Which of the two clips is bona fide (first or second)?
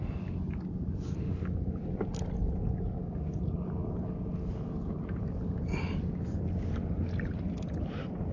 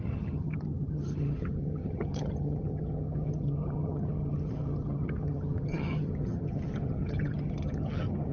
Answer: first